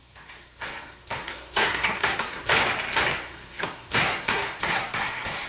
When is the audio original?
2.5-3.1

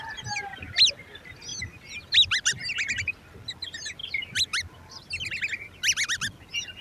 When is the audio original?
0.0-6.8

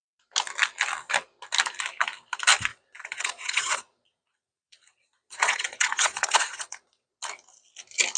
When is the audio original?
0.0-2.7; 7.1-8.2

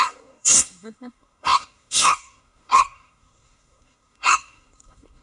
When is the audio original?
none